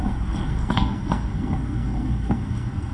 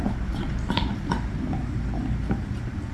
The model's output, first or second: first